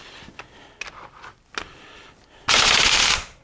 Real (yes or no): yes